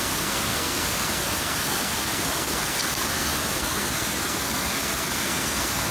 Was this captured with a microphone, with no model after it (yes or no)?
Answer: no